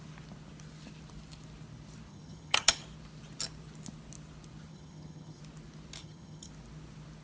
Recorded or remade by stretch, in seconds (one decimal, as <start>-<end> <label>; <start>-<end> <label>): 0.0-2.1 recorded; 2.1-2.8 remade; 2.8-4.7 recorded; 4.7-5.4 remade; 5.4-6.0 recorded; 6.0-6.5 remade; 6.5-7.2 recorded

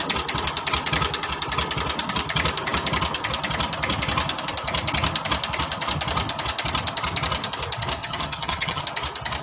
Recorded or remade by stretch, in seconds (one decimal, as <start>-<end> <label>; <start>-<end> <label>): 0.0-8.0 recorded; 8.0-8.8 remade; 8.8-9.4 recorded

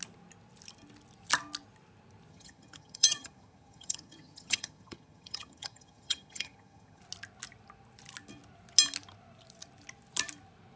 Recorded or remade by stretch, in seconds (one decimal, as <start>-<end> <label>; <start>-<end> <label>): 0.0-2.3 recorded; 2.3-7.0 remade; 7.0-10.8 recorded